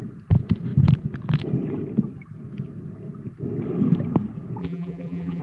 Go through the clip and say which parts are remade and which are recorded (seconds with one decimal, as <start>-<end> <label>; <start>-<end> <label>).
0.0-4.6 recorded; 4.6-5.4 remade